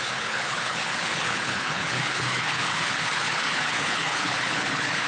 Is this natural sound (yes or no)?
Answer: no